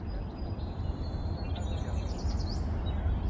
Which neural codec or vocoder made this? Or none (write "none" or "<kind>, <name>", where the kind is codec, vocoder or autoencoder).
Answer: vocoder, BigVGAN v2